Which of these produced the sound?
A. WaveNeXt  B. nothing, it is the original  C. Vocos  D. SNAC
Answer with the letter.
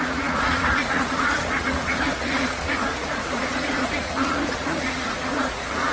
C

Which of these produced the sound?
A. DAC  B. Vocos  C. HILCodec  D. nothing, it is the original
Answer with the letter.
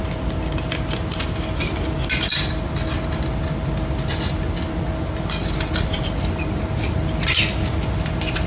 D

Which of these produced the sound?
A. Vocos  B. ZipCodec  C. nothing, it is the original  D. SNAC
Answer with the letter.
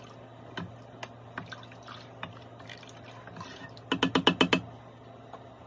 C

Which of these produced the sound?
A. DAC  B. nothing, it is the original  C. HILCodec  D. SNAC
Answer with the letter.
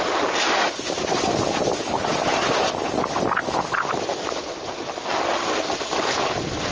B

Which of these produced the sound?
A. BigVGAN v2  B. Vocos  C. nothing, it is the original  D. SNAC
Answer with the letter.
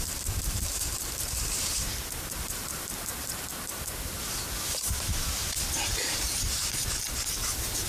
A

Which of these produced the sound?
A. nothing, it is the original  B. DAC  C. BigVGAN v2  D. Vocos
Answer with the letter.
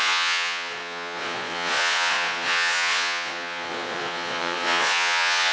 D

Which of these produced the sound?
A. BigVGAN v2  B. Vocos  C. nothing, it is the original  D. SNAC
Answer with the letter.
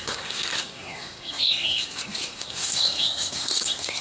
D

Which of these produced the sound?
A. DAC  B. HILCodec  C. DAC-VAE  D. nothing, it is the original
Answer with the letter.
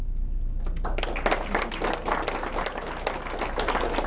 D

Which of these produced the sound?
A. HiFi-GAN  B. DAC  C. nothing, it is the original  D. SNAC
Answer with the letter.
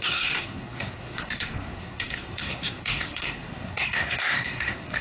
D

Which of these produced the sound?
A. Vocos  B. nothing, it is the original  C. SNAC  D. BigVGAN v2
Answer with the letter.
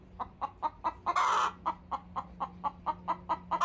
B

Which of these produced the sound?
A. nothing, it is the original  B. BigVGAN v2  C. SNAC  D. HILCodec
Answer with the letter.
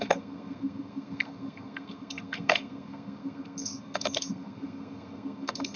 C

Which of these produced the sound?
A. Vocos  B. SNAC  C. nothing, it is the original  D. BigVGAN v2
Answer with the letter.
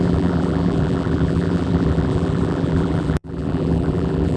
D